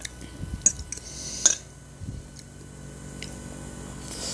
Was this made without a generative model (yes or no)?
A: yes